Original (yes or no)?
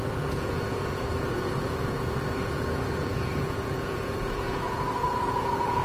no